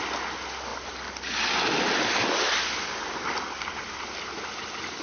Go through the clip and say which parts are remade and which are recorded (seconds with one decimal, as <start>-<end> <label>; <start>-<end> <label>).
0.0-5.0 recorded